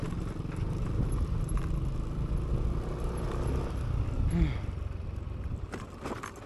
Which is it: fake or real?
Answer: real